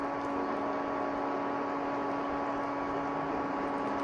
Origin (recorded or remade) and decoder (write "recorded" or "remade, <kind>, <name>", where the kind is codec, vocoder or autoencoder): recorded